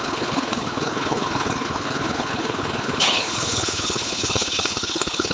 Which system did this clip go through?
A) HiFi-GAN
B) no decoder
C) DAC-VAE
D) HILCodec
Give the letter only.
D